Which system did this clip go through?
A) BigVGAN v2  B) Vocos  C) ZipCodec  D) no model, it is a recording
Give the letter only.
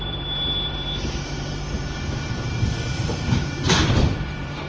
A